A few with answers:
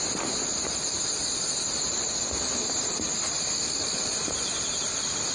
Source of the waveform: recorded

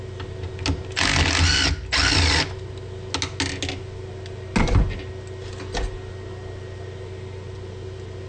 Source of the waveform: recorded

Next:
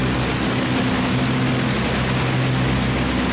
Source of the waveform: recorded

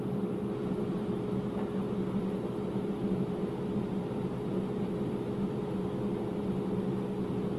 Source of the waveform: remade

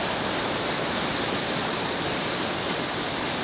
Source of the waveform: recorded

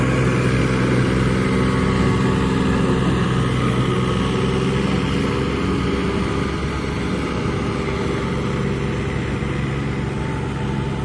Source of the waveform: recorded